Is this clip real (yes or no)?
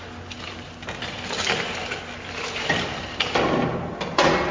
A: yes